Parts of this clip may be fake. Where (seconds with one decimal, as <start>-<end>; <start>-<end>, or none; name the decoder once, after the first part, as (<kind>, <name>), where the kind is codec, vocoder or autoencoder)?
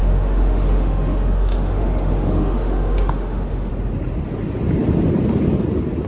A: 0.0-3.7 (autoencoder, DAC-VAE)